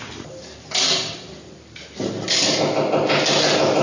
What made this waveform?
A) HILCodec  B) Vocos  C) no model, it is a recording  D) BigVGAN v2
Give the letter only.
C